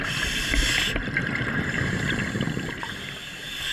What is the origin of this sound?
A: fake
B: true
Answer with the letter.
B